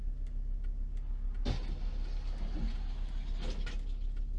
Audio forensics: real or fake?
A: real